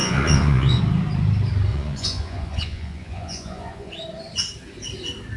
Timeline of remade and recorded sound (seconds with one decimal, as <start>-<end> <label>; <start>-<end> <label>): 0.0-0.8 remade; 0.8-1.7 recorded; 1.7-3.9 remade; 3.9-5.4 recorded